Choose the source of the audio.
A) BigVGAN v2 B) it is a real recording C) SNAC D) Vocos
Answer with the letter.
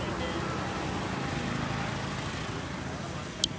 B